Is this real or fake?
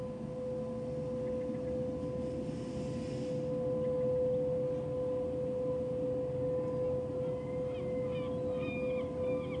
real